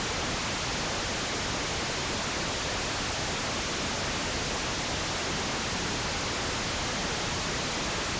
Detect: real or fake real